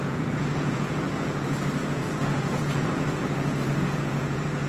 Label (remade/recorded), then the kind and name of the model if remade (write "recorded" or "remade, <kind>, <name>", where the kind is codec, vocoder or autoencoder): remade, vocoder, Vocos